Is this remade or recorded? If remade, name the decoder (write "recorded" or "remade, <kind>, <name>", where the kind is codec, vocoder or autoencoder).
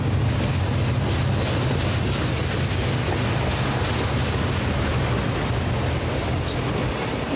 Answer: recorded